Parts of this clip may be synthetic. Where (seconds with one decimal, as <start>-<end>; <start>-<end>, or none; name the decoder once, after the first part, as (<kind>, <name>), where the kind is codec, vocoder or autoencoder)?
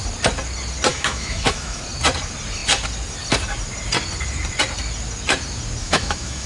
0.9-1.8 (autoencoder, DAC-VAE); 5.8-6.5